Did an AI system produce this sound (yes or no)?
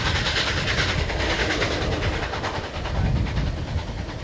no